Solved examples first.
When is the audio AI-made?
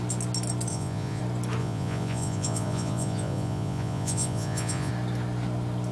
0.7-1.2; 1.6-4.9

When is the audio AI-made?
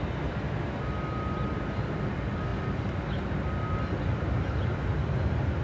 none